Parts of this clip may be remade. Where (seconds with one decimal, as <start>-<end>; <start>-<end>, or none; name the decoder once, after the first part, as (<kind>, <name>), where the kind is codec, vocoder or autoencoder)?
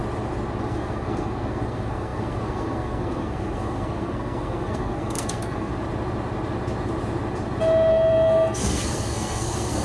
0.6-5.7 (codec, SNAC); 7.9-9.8